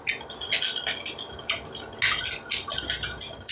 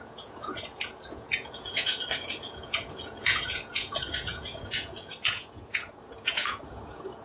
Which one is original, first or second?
first